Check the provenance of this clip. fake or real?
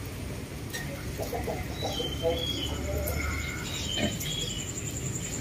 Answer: real